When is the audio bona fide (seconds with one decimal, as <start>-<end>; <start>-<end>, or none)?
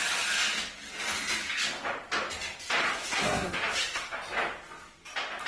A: 0.0-2.8; 4.2-5.5